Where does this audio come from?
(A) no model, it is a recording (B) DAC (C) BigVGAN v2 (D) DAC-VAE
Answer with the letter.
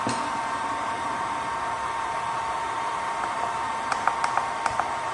C